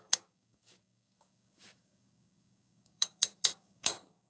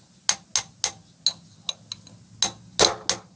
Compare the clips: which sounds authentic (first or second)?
second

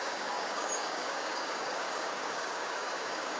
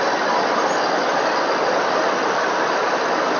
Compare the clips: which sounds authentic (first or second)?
second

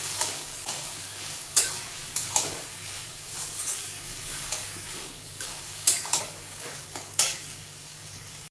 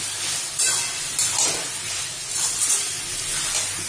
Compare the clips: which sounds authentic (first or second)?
second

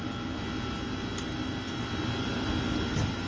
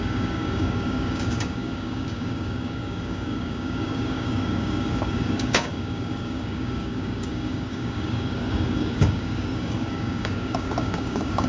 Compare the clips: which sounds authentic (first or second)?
first